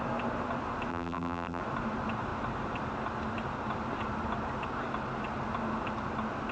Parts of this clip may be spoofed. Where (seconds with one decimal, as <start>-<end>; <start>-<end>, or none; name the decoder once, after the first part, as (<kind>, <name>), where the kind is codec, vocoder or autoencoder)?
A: 0.9-1.6 (vocoder, BigVGAN v2)